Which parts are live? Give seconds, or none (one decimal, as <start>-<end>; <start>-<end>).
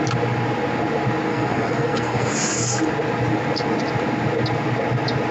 0.0-1.3; 2.8-5.3